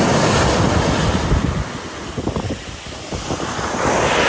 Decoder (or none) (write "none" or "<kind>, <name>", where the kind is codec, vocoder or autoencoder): none